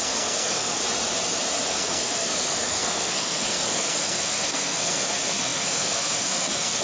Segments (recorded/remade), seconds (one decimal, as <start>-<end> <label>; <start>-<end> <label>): 0.0-0.8 remade; 0.8-1.7 recorded; 1.7-6.8 remade